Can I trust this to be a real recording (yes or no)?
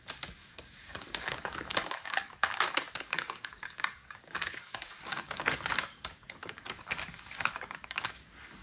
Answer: no